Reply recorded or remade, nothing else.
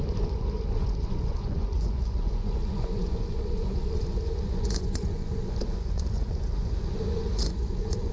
remade